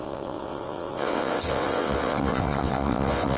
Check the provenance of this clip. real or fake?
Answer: fake